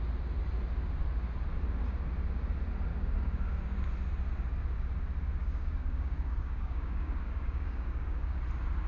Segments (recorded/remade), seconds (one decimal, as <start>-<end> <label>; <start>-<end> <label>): 0.0-2.9 recorded; 2.9-3.8 remade; 3.8-5.4 recorded; 5.4-8.4 remade; 8.4-8.9 recorded